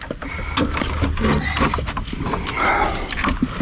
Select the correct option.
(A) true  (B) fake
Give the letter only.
A